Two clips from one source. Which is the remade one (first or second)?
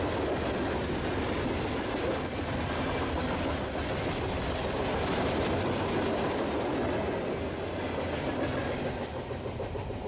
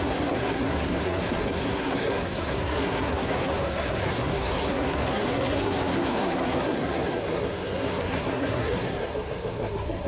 second